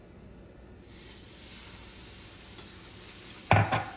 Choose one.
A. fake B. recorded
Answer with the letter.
B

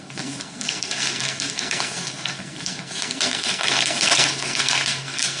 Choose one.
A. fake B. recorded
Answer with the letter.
A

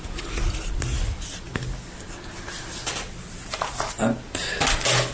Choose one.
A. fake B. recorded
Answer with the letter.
B